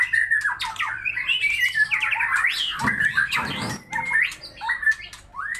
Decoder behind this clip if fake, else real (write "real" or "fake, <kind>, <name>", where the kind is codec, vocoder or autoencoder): fake, vocoder, BigVGAN v2